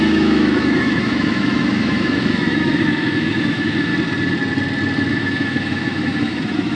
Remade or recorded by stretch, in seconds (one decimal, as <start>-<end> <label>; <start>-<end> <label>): 0.0-3.9 remade; 3.9-5.1 recorded; 5.1-6.7 remade